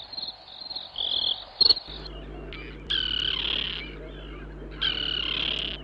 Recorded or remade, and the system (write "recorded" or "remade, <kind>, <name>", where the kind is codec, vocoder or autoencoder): recorded